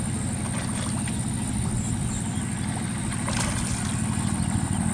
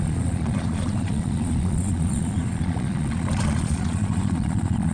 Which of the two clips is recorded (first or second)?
first